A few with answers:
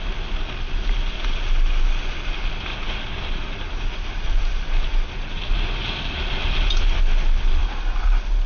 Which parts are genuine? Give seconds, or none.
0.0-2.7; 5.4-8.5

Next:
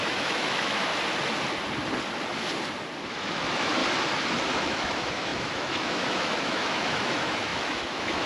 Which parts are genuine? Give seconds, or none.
0.9-3.1; 3.8-4.5

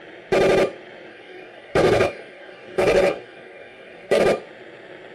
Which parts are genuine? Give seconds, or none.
0.0-1.1; 4.2-5.1

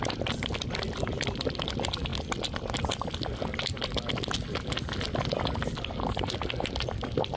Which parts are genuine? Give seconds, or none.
0.0-7.4

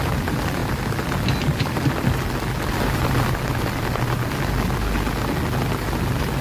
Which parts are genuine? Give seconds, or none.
0.0-6.4

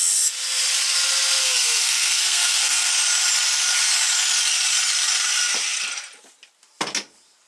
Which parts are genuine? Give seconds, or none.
0.0-1.4; 2.9-7.5

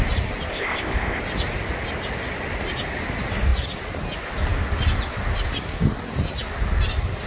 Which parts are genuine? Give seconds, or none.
0.0-0.5; 1.2-7.3